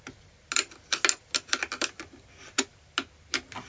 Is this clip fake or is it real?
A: real